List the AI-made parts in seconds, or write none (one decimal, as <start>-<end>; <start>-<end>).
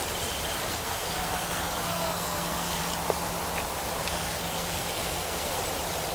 0.7-2.8; 4.0-5.6